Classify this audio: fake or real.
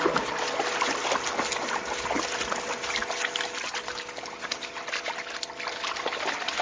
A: real